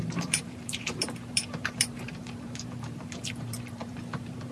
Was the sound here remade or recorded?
remade